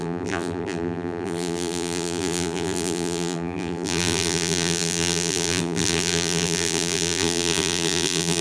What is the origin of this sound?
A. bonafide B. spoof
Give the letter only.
B